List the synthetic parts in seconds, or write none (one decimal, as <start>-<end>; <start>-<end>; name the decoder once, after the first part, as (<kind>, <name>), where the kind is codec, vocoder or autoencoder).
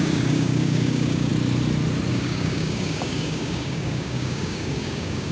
0.0-1.3 (codec, DAC); 2.1-5.3